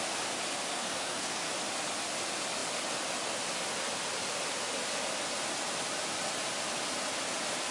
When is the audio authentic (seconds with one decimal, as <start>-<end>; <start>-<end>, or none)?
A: 0.0-0.7; 1.5-7.7